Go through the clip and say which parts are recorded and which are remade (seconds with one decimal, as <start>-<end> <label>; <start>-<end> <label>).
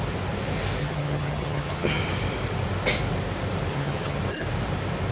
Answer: 0.0-0.8 recorded; 0.8-2.0 remade; 2.0-3.7 recorded; 3.7-4.2 remade; 4.2-5.1 recorded